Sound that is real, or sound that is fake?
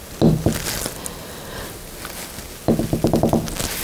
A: real